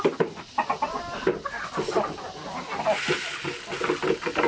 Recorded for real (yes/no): yes